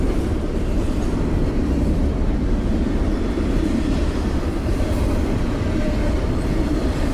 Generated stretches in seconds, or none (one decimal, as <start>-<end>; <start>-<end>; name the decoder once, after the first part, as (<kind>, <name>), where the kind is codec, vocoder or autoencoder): 0.0-4.0 (vocoder, BigVGAN v2); 4.8-7.1